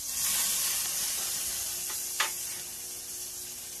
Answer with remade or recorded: recorded